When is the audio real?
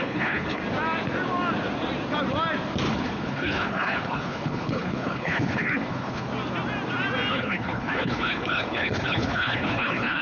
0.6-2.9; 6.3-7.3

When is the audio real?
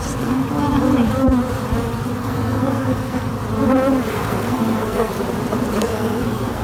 0.4-2.2; 3.3-4.1; 5.1-5.8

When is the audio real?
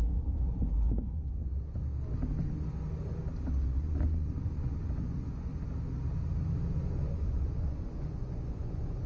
1.4-3.7; 5.5-6.9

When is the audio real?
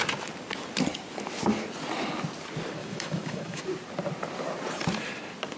0.0-2.8; 3.6-5.6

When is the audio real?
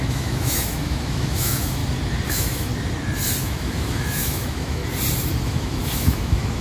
1.8-2.3; 2.7-3.4; 4.8-5.5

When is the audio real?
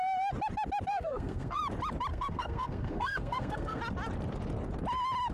0.0-0.9; 1.6-2.1; 3.8-5.3